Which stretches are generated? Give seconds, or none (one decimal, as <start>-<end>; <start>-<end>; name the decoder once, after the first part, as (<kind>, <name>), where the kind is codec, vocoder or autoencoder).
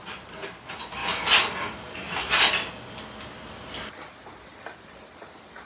none